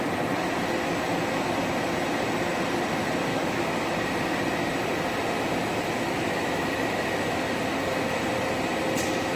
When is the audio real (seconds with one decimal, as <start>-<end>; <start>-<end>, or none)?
0.0-3.3; 3.9-5.7; 7.5-9.4